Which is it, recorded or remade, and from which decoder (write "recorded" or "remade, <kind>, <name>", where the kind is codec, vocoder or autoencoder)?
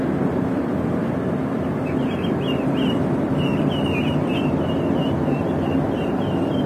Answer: recorded